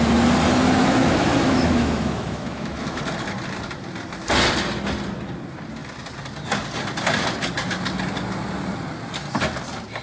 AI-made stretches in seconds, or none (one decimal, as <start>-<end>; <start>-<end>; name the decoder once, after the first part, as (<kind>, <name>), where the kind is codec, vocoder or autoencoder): 0.8-3.0 (autoencoder, DAC-VAE)